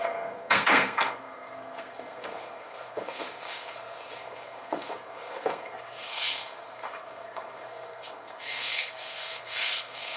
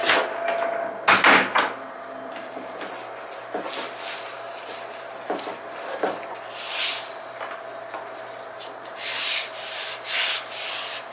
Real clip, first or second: second